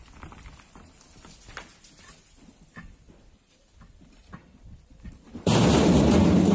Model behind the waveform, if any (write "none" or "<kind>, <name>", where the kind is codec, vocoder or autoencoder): none